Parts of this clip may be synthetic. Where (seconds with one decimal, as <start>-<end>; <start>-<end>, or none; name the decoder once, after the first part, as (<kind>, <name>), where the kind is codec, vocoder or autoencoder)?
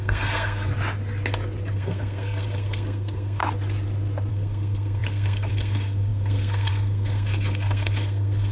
0.0-0.7 (codec, SNAC); 1.7-3.4; 4.3-8.5